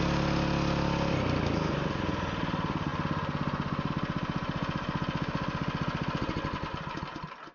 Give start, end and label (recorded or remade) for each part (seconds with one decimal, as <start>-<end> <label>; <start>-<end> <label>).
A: 0.0-7.5 recorded